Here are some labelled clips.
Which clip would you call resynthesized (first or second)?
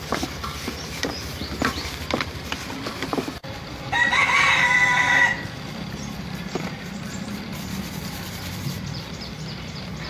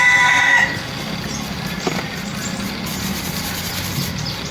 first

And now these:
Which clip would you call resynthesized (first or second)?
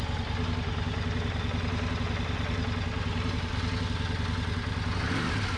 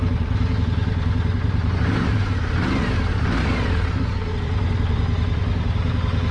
second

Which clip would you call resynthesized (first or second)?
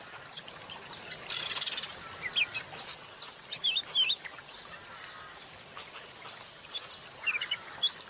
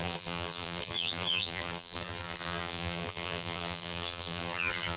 second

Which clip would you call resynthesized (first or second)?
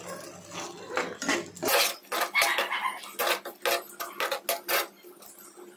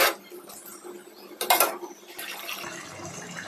second